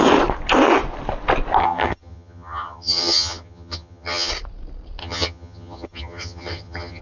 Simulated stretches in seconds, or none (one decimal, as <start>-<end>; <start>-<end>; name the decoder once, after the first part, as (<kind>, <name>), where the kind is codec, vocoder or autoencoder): 1.6-4.3 (vocoder, HiFi-GAN); 5.0-7.0